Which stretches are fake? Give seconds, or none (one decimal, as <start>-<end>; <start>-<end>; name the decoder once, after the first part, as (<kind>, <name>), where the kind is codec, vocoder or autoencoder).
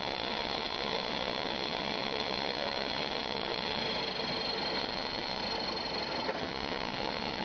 0.0-3.8 (vocoder, WaveNeXt); 4.8-5.4; 6.4-7.4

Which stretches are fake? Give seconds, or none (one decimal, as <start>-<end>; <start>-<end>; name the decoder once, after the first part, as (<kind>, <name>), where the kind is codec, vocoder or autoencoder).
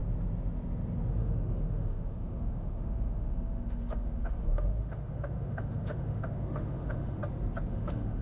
1.2-7.2 (autoencoder, DAC-VAE); 7.7-8.2